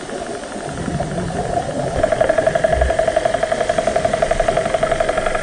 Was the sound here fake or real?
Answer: real